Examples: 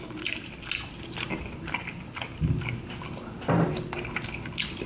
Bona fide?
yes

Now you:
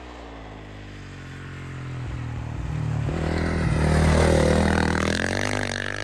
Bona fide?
yes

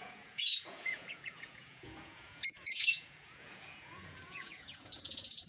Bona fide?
no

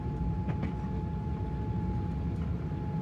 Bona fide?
yes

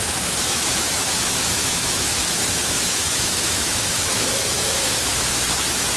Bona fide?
no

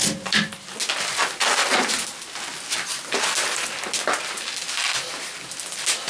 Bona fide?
yes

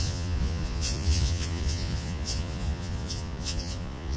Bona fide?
no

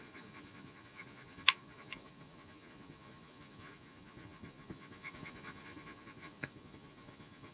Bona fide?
no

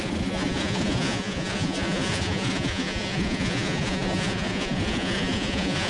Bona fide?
no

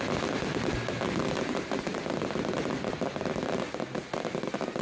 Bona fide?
yes